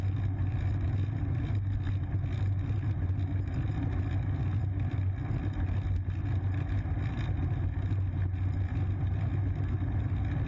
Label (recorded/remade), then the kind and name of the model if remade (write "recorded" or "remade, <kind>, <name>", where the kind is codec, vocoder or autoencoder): recorded